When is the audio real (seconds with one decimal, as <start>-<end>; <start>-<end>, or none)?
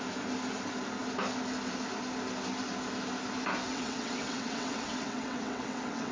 0.0-3.7